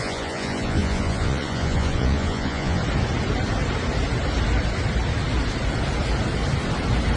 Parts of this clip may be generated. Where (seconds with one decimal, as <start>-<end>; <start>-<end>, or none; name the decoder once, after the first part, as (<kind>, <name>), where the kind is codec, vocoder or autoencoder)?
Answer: 0.0-2.8 (vocoder, Vocos)